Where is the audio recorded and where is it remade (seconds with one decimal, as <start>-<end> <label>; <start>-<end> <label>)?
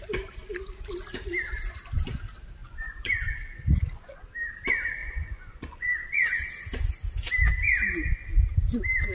0.0-2.6 recorded; 2.6-4.2 remade; 4.2-5.0 recorded; 5.0-6.5 remade; 6.5-9.1 recorded